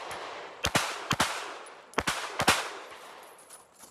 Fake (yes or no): no